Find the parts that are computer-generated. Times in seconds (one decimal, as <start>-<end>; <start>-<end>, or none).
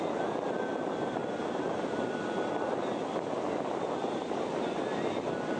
none